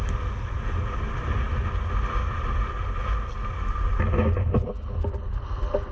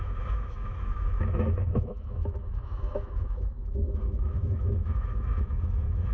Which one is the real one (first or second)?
first